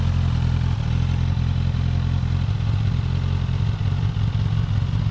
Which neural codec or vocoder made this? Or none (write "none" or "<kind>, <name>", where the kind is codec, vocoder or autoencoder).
none